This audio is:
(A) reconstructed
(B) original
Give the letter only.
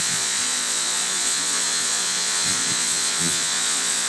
A